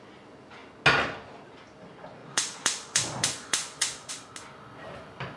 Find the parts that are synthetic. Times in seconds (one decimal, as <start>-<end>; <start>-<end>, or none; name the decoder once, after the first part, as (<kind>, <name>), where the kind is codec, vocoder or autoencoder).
2.2-4.1 (vocoder, Vocos)